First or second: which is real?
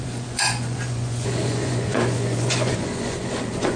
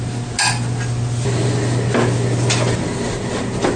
second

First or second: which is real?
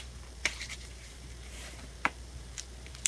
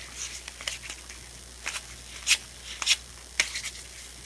second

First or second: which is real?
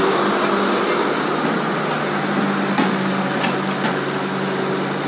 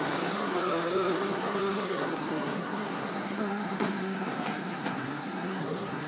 first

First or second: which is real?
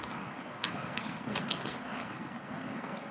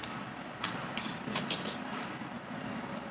second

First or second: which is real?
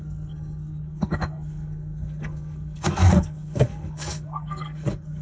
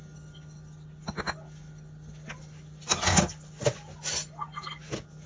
second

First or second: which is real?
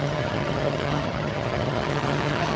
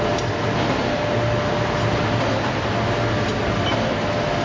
second